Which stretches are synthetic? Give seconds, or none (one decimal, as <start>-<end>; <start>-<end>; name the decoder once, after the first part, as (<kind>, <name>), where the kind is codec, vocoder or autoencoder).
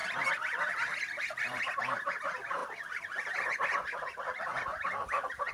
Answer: 1.8-5.5 (vocoder, BigVGAN v2)